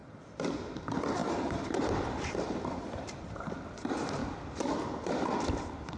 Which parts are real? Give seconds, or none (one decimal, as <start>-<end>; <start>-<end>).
0.7-1.2; 3.5-6.0